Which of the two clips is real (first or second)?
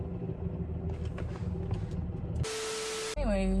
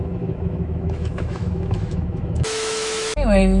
first